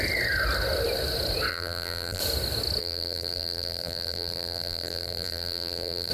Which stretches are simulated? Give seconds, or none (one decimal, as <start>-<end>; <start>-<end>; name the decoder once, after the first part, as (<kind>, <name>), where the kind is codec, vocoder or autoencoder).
1.5-2.2 (vocoder, BigVGAN v2); 2.8-6.1